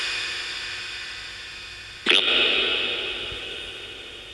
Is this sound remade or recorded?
recorded